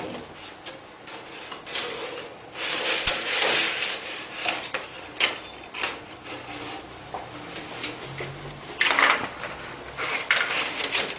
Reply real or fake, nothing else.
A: real